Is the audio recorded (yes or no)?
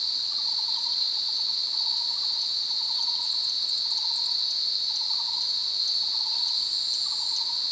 yes